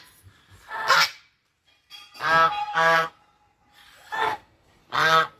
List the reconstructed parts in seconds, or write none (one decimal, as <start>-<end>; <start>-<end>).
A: 2.6-3.1; 4.2-4.8